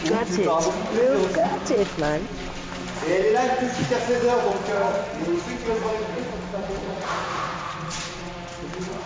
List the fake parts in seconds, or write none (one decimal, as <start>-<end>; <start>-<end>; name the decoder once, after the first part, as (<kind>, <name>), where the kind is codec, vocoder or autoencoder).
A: 6.6-8.2 (vocoder, Vocos)